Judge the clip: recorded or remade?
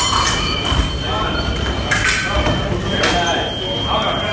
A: recorded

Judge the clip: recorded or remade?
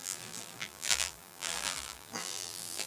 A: remade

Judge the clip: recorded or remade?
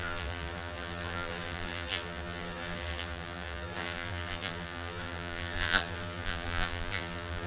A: remade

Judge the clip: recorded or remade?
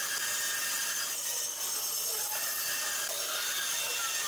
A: recorded